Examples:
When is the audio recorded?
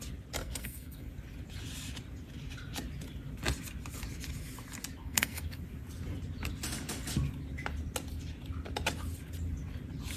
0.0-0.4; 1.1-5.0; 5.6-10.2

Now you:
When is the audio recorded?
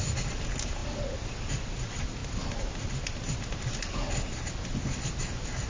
0.0-5.7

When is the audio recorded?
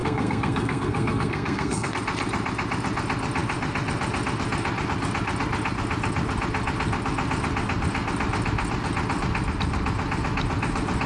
1.9-11.1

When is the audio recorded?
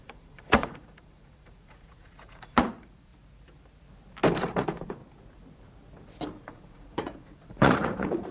3.1-4.4; 5.0-6.4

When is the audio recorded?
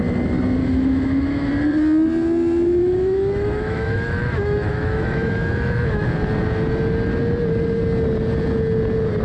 0.0-0.6; 1.5-2.8; 6.1-9.2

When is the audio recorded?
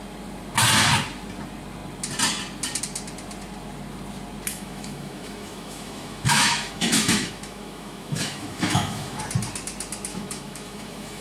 0.0-4.5; 9.2-10.1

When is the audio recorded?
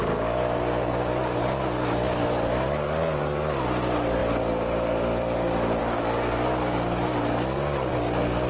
0.0-4.2; 5.8-8.5